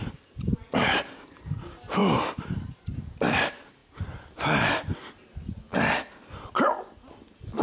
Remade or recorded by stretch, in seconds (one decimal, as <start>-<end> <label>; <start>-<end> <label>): 0.0-7.6 recorded